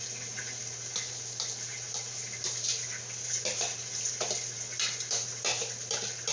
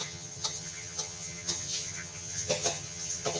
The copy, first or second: second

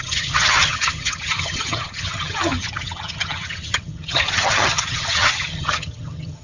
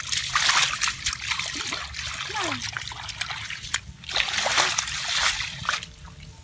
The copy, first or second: first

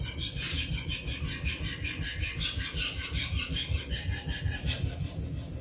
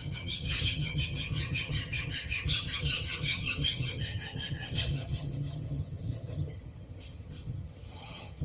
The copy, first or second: second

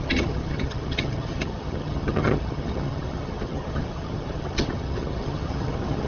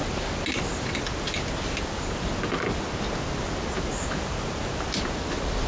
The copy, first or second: first